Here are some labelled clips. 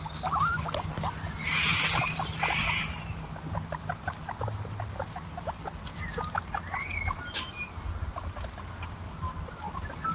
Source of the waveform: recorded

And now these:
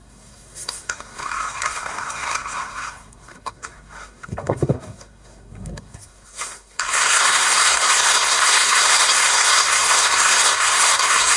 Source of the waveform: remade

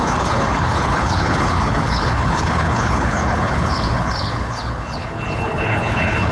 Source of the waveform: remade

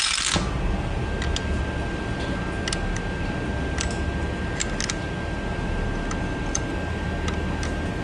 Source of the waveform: recorded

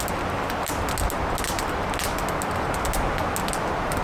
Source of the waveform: recorded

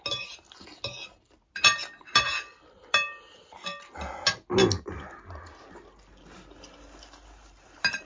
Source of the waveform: recorded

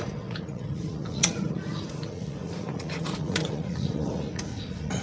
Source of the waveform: remade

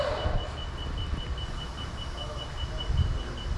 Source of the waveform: recorded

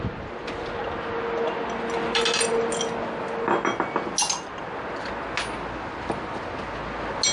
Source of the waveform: recorded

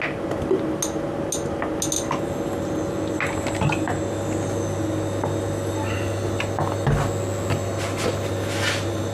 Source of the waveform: recorded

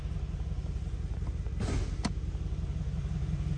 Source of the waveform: recorded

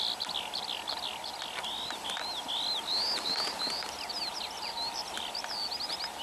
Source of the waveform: recorded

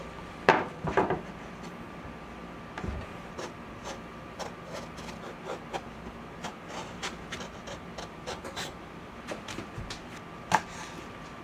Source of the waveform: recorded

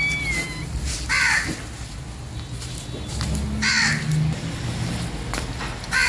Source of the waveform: recorded